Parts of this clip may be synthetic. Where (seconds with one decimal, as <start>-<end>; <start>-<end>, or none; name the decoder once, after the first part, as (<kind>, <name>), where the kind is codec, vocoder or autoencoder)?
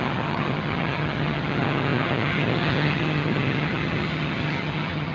0.0-5.1 (vocoder, HiFi-GAN)